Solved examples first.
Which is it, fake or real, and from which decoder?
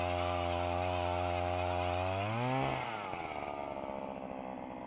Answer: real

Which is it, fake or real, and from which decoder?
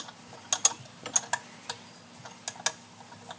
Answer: real